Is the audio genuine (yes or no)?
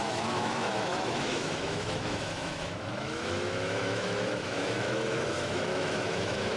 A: no